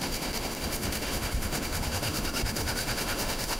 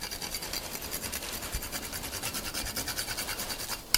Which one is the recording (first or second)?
second